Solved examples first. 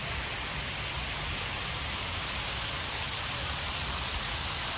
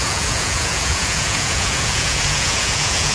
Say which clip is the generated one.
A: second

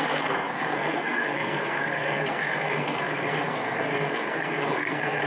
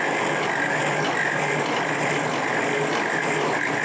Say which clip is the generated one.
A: first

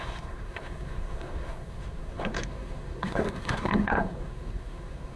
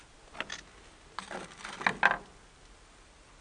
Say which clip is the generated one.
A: first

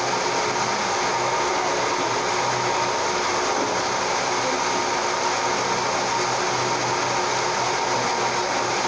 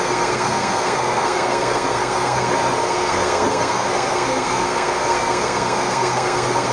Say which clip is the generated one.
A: second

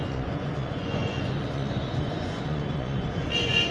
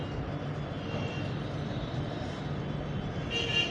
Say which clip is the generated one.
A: first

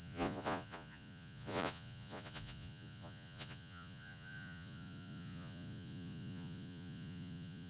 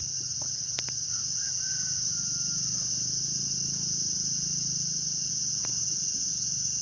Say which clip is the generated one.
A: first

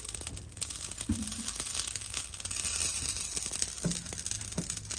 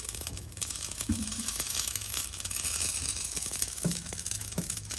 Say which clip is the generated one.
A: second